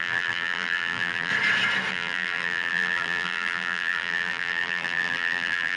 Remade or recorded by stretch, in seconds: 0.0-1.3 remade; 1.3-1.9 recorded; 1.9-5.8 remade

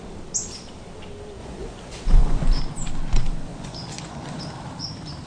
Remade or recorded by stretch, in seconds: 0.0-1.4 recorded; 1.4-2.6 remade; 2.6-3.5 recorded; 3.5-4.4 remade; 4.4-5.3 recorded

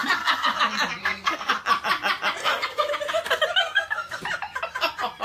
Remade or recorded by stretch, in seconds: 0.0-0.6 remade; 0.6-1.0 recorded; 1.0-1.5 remade; 1.5-2.4 recorded; 2.4-2.9 remade; 2.9-3.6 recorded; 3.6-4.2 remade; 4.2-5.2 recorded

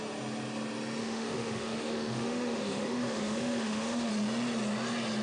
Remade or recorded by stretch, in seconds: 0.0-1.0 recorded; 1.0-4.1 remade; 4.1-5.2 recorded

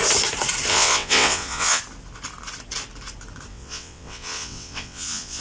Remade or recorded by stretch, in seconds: 0.0-0.7 recorded; 0.7-1.8 remade; 1.8-3.5 recorded; 3.5-5.4 remade